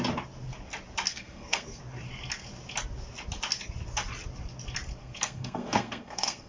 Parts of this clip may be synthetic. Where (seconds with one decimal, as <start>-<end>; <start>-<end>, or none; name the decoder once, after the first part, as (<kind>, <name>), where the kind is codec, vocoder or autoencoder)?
1.1-1.8 (codec, SNAC); 5.0-6.5